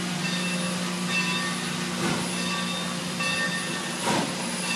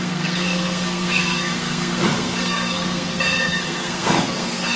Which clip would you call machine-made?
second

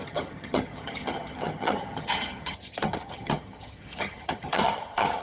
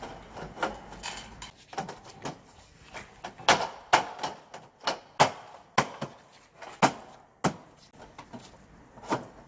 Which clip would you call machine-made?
first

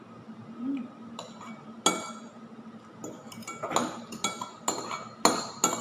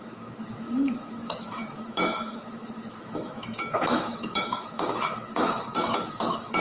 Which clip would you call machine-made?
second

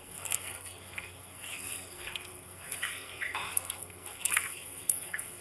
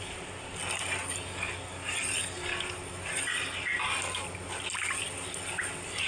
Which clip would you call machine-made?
first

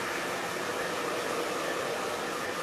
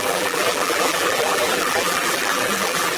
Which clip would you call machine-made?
second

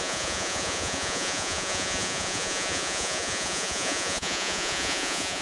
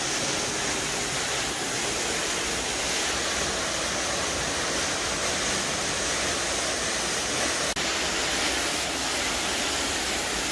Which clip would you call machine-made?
first